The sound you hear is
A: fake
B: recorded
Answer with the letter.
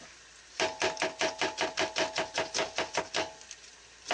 B